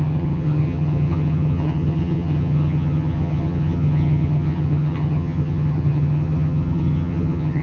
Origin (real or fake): fake